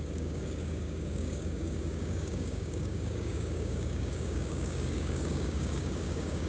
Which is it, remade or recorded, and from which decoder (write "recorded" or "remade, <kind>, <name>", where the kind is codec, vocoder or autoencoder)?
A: remade, codec, DAC